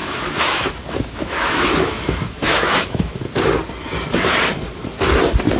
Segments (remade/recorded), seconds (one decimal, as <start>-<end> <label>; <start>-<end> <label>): 0.0-3.3 remade; 3.3-5.6 recorded